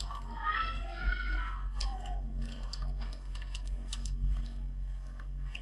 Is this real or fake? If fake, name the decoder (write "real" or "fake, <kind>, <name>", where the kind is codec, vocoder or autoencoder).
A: fake, codec, SNAC